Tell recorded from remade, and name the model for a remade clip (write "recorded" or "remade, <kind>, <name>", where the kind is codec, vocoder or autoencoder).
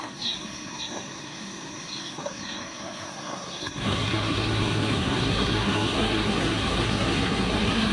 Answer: remade, codec, SNAC